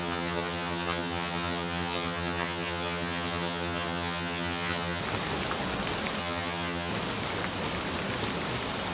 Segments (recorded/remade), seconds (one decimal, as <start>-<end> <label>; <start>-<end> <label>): 0.0-5.0 remade; 5.0-6.2 recorded; 6.2-6.9 remade; 6.9-8.9 recorded